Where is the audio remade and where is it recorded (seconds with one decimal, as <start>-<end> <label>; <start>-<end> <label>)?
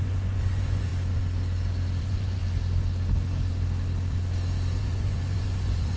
0.0-0.9 remade; 0.9-2.0 recorded; 2.0-2.4 remade; 2.4-4.8 recorded; 4.8-6.0 remade